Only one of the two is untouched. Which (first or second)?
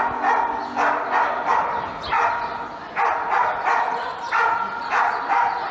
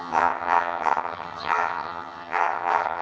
first